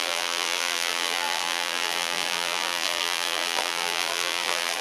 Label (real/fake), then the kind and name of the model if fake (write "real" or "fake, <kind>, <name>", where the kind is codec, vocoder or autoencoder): fake, vocoder, BigVGAN v2